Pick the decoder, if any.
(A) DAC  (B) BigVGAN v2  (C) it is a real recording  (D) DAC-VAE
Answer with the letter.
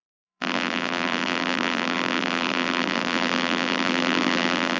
B